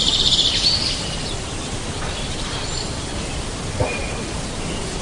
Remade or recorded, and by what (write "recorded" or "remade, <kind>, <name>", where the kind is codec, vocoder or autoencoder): remade, vocoder, BigVGAN v2